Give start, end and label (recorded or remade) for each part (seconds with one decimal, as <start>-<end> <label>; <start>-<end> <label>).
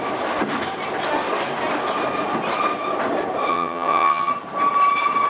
0.0-3.5 recorded; 3.5-4.3 remade; 4.3-5.3 recorded